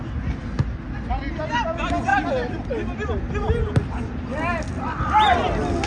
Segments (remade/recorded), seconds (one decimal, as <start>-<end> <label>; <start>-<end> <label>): 0.0-5.9 recorded